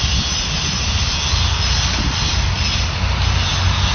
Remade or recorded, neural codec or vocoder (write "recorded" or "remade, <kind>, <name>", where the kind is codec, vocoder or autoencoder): recorded